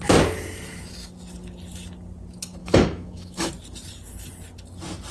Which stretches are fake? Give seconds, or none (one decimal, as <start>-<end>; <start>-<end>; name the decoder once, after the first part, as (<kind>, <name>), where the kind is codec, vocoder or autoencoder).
2.6-3.5 (autoencoder, DAC-VAE)